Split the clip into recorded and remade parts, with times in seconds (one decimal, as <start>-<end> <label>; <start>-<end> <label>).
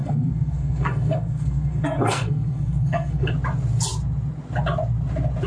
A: 0.0-3.3 remade; 3.3-5.5 recorded